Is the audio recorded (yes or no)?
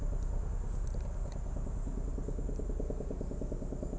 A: yes